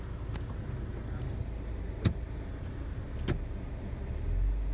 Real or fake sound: real